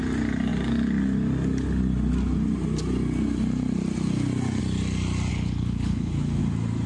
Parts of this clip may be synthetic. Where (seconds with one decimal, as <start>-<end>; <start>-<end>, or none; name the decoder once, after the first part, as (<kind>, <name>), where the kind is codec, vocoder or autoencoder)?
5.3-6.4 (codec, HILCodec)